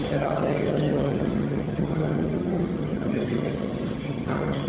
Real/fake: fake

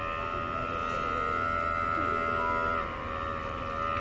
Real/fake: real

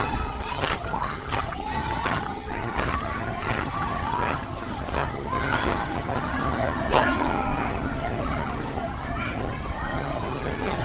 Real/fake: fake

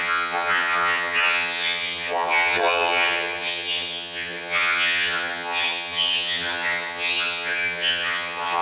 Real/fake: fake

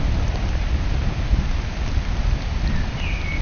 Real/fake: real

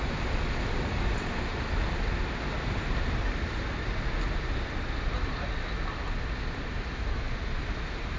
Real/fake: real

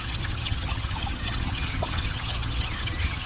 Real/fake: fake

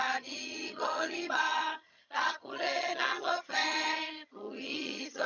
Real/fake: fake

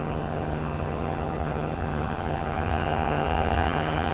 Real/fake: fake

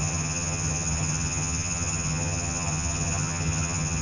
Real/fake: fake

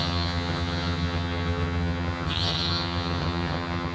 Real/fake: fake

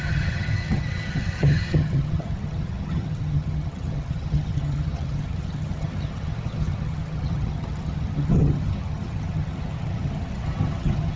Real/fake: fake